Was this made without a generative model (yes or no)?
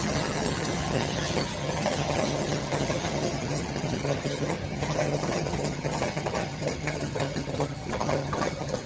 no